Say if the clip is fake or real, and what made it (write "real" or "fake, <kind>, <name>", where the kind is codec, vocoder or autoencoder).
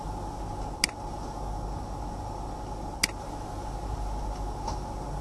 real